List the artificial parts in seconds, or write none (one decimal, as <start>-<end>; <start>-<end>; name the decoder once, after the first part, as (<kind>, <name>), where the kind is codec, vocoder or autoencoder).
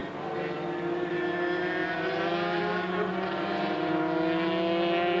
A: none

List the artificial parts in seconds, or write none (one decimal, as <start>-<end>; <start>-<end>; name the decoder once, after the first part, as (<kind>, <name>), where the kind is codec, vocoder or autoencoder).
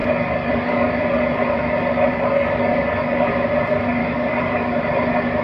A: 0.0-0.9 (codec, DAC); 2.1-3.3; 4.0-4.8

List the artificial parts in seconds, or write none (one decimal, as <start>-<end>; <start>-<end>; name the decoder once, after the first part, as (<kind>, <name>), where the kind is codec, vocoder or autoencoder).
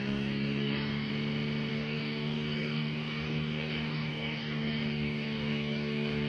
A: 0.0-1.1 (codec, DAC); 1.7-6.3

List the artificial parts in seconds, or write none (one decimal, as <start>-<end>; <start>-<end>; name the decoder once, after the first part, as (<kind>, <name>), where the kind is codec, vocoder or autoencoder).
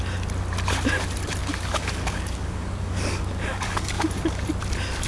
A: 1.4-4.5 (codec, DAC)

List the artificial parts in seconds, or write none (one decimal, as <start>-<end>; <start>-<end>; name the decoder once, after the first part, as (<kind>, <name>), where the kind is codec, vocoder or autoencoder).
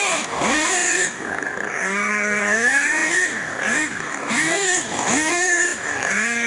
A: 0.0-6.5 (codec, DAC)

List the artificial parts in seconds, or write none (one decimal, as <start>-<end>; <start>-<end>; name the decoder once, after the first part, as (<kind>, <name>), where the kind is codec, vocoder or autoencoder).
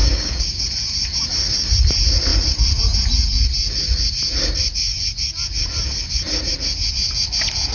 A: 0.0-0.6 (codec, DAC)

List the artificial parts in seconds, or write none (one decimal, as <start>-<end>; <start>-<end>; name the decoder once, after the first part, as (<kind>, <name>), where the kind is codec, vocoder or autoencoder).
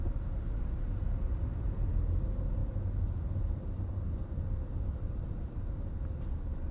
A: none